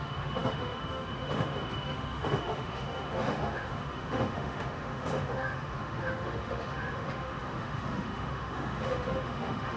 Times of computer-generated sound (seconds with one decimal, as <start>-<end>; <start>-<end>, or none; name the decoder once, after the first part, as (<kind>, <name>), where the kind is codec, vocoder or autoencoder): 0.0-9.8 (autoencoder, DAC-VAE)